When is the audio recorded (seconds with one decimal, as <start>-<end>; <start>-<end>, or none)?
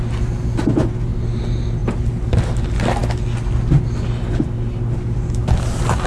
0.0-6.1